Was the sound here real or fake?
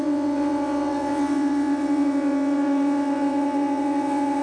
fake